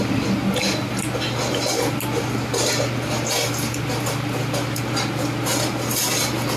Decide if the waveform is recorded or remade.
recorded